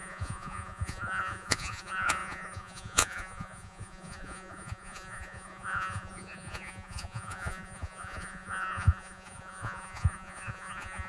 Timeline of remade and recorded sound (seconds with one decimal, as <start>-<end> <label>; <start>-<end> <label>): 0.0-11.1 remade